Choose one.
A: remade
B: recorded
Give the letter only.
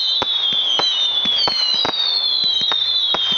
B